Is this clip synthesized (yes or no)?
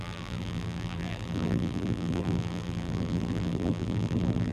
yes